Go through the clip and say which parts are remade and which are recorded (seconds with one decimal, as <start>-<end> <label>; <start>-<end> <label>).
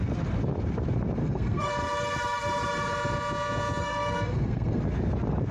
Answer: 0.0-1.2 recorded; 1.2-1.7 remade; 1.7-3.8 recorded; 3.8-4.8 remade; 4.8-5.5 recorded